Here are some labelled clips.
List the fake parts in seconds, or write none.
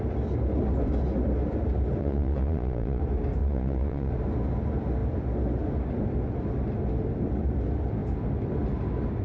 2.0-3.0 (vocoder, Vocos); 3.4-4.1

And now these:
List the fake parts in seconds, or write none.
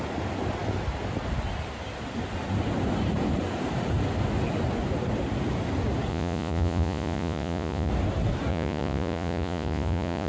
6.1-7.9 (vocoder, Vocos); 8.5-10.3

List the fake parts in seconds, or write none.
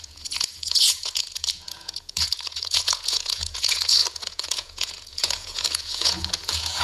0.0-6.8 (vocoder, Vocos)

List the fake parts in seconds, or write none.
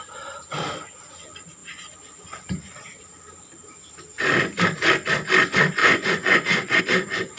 5.8-6.8 (vocoder, Vocos)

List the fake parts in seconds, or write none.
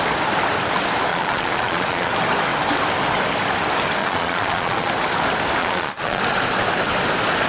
1.1-2.1 (vocoder, Vocos); 4.0-4.9; 5.6-6.2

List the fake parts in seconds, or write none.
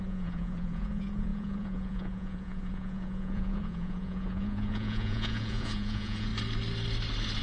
0.0-6.3 (vocoder, Vocos)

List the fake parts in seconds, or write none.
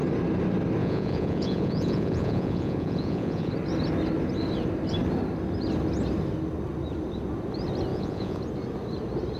0.8-3.5 (vocoder, Vocos); 7.9-8.4